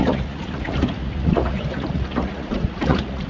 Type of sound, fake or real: fake